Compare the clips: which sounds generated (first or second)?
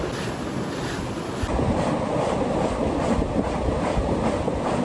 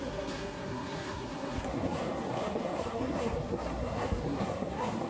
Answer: second